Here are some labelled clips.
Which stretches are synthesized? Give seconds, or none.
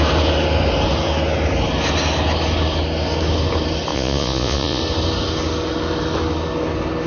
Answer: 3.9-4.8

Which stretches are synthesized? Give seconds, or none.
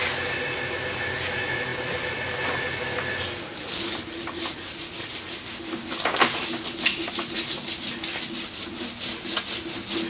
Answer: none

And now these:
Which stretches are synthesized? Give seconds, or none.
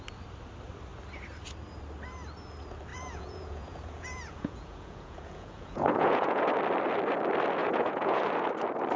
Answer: 2.9-6.4; 7.6-8.2